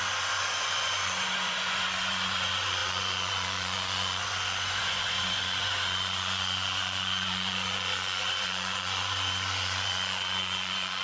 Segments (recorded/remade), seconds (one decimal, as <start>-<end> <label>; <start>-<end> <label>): 0.0-11.0 remade